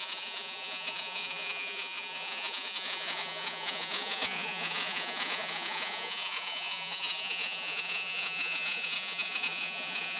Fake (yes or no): yes